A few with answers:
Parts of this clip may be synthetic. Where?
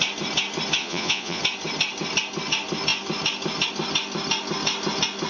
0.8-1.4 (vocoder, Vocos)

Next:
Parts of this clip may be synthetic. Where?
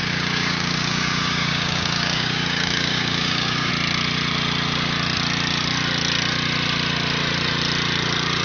0.0-3.7 (codec, DAC)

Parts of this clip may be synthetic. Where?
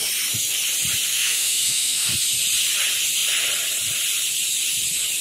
1.1-2.1 (autoencoder, DAC-VAE)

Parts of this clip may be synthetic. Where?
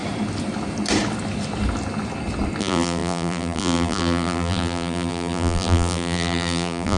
2.6-7.0 (vocoder, BigVGAN v2)